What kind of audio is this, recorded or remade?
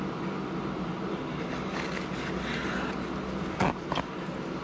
recorded